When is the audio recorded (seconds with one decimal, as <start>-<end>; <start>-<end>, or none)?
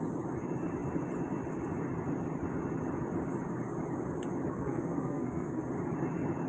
0.0-4.5; 5.6-6.5